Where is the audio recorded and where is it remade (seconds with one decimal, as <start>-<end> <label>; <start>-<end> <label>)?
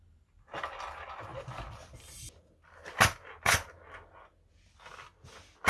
0.0-5.7 recorded